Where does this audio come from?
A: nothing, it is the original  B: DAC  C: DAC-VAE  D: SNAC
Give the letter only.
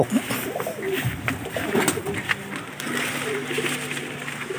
A